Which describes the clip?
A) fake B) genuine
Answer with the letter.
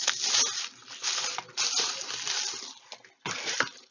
B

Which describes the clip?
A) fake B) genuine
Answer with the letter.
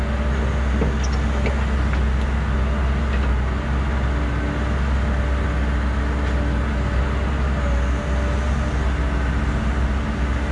B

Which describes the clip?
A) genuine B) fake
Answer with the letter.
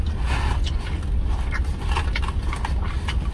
A